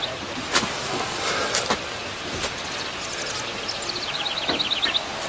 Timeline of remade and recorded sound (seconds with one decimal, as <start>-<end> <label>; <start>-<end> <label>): 0.0-2.0 remade; 2.0-5.3 recorded